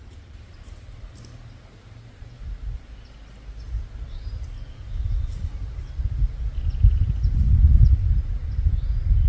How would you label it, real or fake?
real